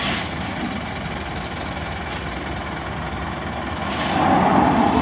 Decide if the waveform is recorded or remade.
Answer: recorded